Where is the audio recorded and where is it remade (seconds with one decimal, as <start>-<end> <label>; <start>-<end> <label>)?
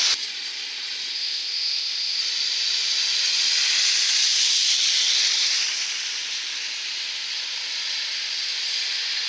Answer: 0.0-1.1 recorded; 1.1-2.2 remade; 2.2-9.3 recorded